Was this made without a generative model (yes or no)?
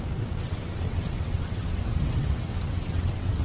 no